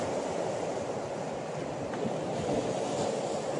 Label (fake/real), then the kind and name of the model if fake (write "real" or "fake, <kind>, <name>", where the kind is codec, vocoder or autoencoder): real